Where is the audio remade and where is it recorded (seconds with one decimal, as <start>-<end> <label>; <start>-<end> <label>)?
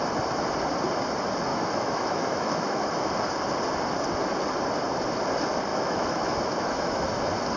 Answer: 0.0-1.5 recorded; 1.5-3.1 remade; 3.1-5.7 recorded; 5.7-7.1 remade; 7.1-7.6 recorded